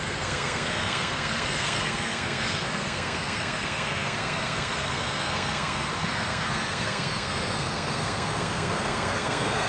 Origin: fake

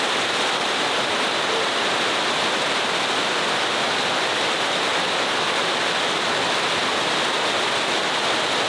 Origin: real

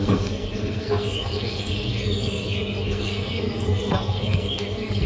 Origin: fake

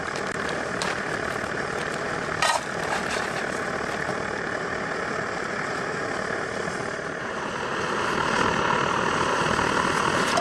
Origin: real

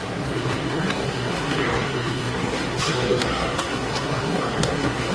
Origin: fake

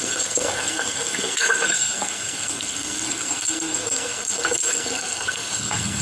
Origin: fake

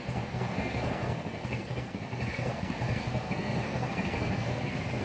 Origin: fake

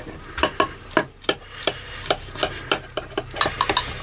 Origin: real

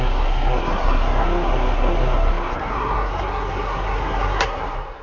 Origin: fake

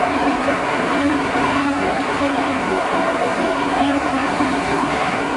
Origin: fake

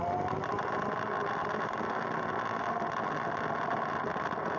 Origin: real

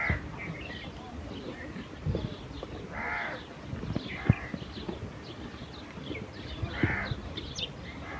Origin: real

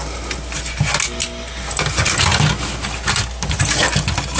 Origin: real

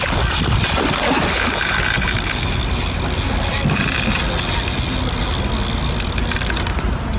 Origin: real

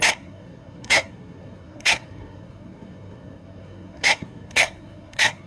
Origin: fake